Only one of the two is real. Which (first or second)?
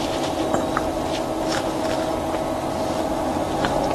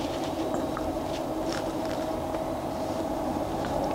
first